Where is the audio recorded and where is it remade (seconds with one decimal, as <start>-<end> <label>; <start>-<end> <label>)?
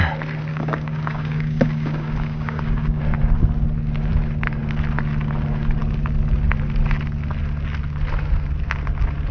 0.0-0.5 recorded; 0.5-3.0 remade; 3.0-9.3 recorded